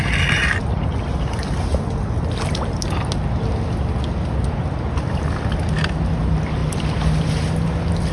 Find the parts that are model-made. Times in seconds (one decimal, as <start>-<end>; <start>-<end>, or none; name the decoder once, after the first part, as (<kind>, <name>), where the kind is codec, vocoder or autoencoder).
none